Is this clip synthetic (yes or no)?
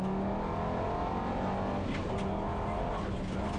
no